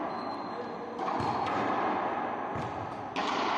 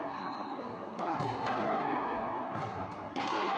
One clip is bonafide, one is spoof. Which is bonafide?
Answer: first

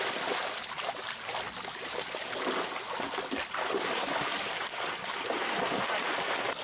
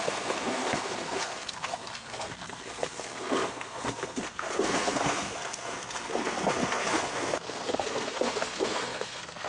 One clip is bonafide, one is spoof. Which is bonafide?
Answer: first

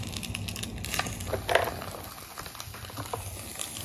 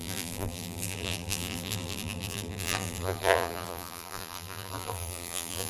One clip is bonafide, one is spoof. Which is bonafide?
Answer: first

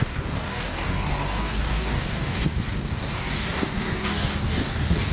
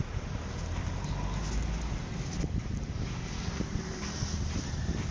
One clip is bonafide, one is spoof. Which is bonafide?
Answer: second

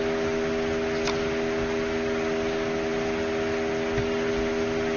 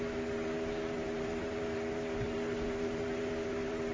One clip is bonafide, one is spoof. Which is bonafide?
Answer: first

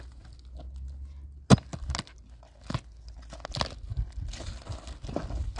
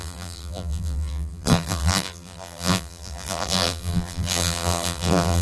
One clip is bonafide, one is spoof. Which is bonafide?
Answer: first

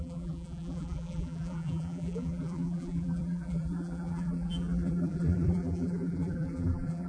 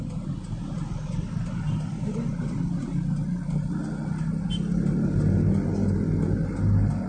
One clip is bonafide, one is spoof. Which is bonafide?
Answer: second